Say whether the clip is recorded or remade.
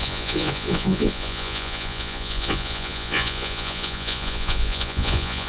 remade